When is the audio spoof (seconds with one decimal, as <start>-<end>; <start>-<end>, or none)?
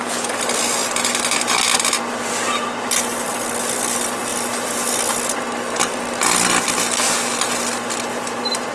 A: none